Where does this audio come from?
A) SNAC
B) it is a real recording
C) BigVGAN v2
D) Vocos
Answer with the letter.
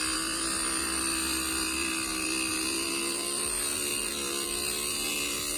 B